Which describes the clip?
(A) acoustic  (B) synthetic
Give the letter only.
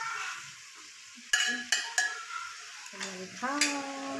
A